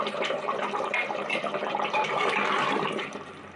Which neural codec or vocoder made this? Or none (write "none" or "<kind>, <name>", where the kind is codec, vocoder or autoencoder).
vocoder, BigVGAN v2